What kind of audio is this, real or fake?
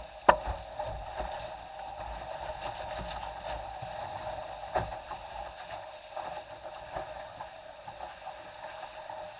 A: real